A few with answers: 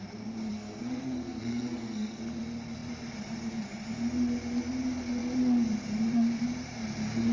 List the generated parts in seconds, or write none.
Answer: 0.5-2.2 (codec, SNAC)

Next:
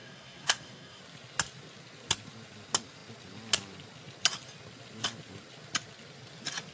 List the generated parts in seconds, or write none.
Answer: 0.0-1.0 (codec, SNAC)

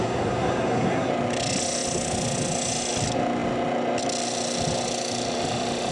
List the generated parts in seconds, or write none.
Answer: 0.0-1.1 (codec, SNAC)

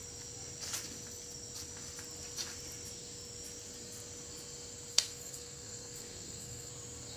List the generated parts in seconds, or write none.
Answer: 4.9-6.7 (codec, SNAC)